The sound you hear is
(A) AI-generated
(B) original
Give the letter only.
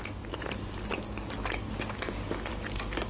B